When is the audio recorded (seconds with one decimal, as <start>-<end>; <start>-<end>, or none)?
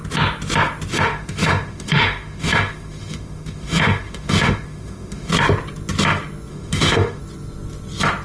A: 0.0-0.9; 5.3-6.5; 7.2-8.2